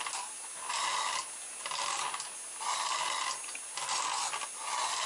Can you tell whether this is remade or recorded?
recorded